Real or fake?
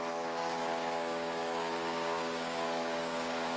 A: fake